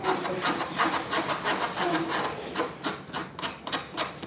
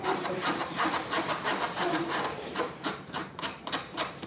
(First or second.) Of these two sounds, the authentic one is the first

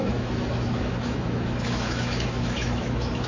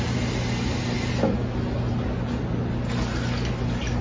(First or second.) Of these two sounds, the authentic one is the second